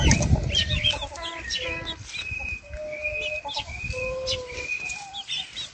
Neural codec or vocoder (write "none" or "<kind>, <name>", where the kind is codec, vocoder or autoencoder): none